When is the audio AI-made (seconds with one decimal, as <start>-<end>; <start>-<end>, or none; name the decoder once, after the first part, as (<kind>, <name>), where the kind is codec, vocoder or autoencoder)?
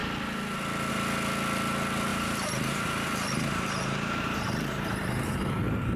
2.1-6.0 (vocoder, BigVGAN v2)